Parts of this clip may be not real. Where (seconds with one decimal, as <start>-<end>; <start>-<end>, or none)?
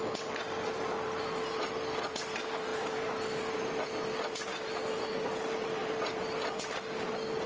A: none